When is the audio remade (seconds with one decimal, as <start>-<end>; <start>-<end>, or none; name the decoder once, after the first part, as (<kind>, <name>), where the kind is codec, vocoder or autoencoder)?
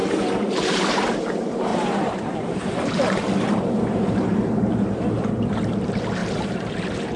0.0-7.2 (vocoder, BigVGAN v2)